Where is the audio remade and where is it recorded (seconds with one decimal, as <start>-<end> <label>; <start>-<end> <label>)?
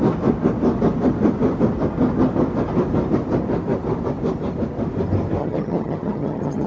0.0-5.4 recorded; 5.4-6.7 remade